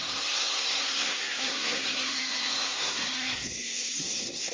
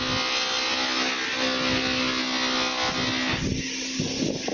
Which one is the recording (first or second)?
second